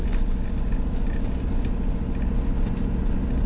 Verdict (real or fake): real